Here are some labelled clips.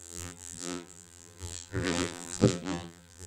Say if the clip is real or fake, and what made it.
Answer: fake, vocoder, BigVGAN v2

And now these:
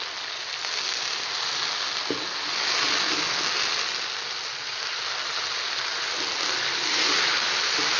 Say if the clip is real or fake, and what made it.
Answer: real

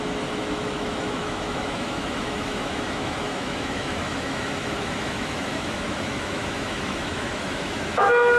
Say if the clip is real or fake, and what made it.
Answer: fake, autoencoder, DAC-VAE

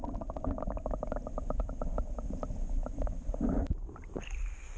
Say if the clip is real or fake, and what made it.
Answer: real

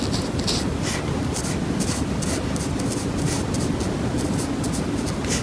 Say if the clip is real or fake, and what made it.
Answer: real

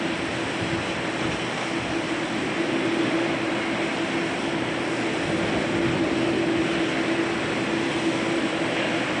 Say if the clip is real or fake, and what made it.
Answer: real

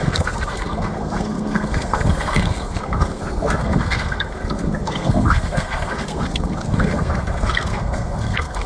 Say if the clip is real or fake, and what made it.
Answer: fake, codec, SNAC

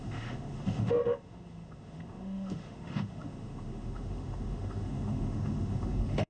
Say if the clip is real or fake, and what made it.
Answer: fake, autoencoder, DAC-VAE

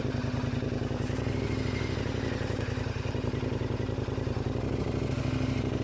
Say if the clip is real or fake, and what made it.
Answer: real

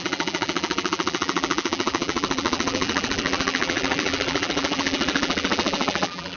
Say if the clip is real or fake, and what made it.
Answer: fake, vocoder, BigVGAN v2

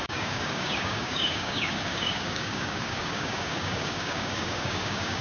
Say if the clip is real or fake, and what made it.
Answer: fake, codec, DAC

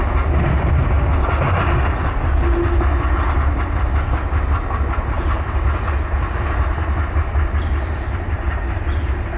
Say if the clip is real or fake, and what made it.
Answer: real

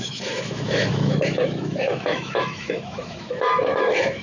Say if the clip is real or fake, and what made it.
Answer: fake, autoencoder, DAC-VAE